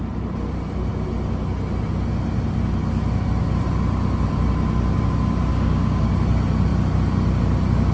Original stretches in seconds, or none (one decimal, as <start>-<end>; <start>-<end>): 0.0-5.5; 6.1-7.9